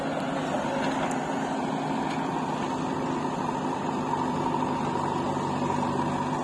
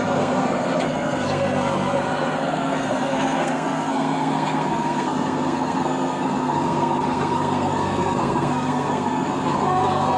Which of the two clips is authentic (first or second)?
first